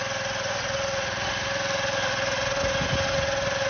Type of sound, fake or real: real